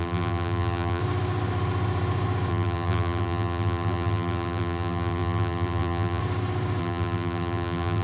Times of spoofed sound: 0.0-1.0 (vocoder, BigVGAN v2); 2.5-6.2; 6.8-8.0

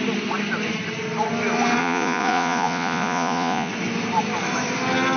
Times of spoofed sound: 1.8-3.7 (vocoder, Vocos)

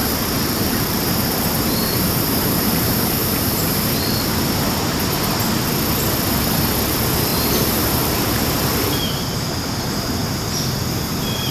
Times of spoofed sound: 0.0-5.2 (vocoder, BigVGAN v2); 7.3-9.5

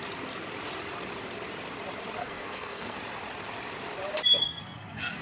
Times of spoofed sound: 2.2-3.0 (codec, SNAC); 4.4-5.2

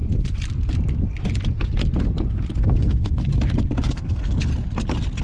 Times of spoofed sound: 2.6-3.2 (codec, SNAC); 3.9-4.5

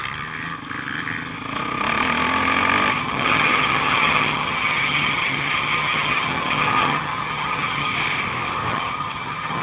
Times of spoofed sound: 3.0-7.9 (vocoder, HiFi-GAN); 8.7-9.6

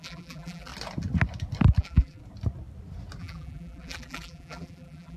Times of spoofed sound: 0.0-0.7 (vocoder, BigVGAN v2); 1.8-2.2; 3.2-5.2

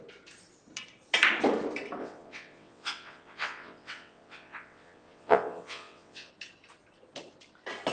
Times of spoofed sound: 2.0-6.3 (vocoder, WaveNeXt)